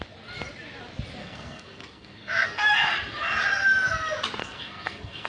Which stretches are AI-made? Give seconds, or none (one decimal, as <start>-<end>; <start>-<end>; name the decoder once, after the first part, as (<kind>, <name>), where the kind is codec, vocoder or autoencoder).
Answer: 1.2-2.7 (codec, SNAC); 4.4-5.3